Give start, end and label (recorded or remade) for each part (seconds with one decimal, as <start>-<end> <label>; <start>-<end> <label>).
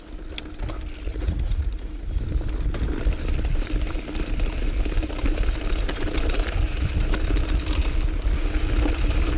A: 0.0-1.1 recorded; 1.1-2.0 remade; 2.0-9.4 recorded